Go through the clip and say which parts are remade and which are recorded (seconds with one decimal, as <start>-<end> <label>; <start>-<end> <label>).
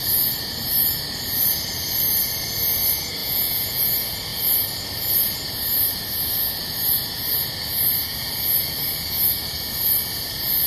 0.0-3.2 recorded; 3.2-3.8 remade; 3.8-10.7 recorded